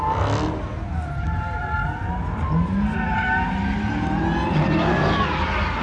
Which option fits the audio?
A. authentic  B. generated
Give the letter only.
A